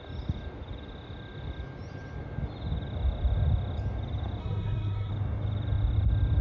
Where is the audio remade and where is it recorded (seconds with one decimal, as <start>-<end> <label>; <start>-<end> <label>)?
0.0-4.4 recorded; 4.4-5.1 remade; 5.1-6.4 recorded

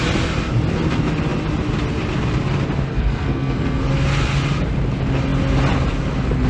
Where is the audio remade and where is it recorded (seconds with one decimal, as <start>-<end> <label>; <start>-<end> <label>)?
0.0-2.9 recorded; 2.9-3.8 remade; 3.8-6.5 recorded

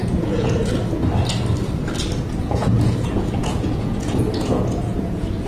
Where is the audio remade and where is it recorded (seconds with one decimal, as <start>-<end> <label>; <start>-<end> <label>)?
0.0-0.6 remade; 0.6-2.3 recorded; 2.3-5.5 remade

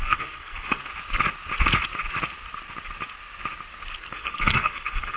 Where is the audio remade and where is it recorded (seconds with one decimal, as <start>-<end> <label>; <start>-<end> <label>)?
0.0-0.9 remade; 0.9-4.0 recorded; 4.0-5.2 remade

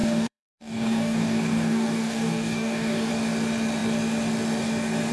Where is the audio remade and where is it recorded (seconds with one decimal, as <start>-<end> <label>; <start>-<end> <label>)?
0.0-3.1 remade; 3.1-5.1 recorded

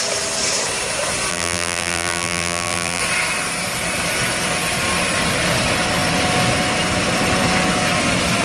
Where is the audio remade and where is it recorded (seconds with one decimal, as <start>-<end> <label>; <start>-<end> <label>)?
0.0-1.3 recorded; 1.3-3.0 remade; 3.0-8.4 recorded

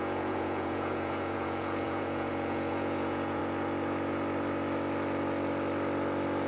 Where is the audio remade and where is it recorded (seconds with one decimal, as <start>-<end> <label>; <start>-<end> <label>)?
0.0-3.4 remade; 3.4-6.5 recorded